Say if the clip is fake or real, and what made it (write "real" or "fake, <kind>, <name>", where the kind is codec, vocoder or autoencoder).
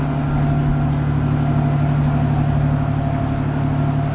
real